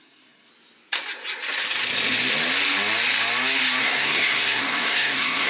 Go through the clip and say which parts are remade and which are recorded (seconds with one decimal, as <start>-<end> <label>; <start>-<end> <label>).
0.0-0.5 remade; 0.5-3.8 recorded; 3.8-5.5 remade